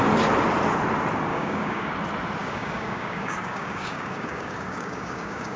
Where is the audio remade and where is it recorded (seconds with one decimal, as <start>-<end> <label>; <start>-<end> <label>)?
0.0-1.3 recorded; 1.3-1.9 remade; 1.9-2.4 recorded; 2.4-5.6 remade